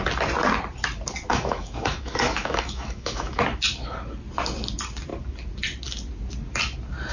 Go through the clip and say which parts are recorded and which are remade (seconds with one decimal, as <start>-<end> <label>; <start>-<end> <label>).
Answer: 0.0-1.3 recorded; 1.3-3.4 remade; 3.4-7.1 recorded